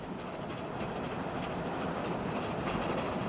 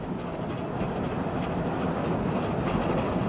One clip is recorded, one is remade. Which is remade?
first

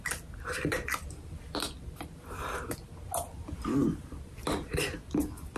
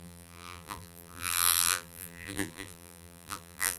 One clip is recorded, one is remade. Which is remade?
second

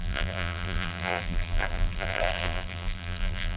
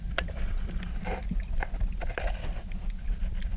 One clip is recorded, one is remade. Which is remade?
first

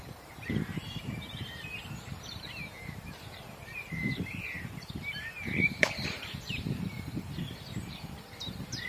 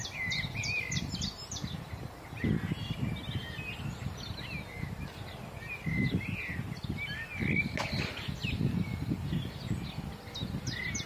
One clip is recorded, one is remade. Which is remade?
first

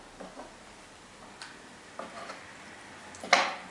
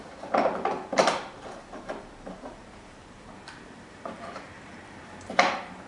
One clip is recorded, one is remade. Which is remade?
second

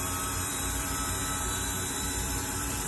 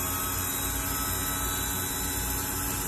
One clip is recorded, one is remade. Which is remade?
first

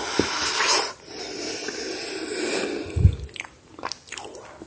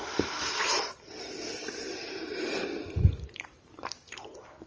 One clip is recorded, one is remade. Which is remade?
second